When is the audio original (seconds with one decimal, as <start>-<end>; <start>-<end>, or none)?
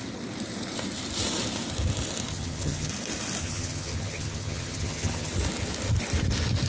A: 0.0-2.3; 2.9-3.4; 5.3-6.7